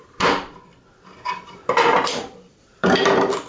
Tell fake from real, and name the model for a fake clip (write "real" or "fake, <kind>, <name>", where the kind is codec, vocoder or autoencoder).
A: fake, vocoder, BigVGAN v2